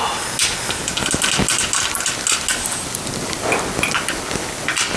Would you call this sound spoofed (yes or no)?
no